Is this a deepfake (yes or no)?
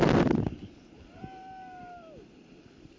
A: no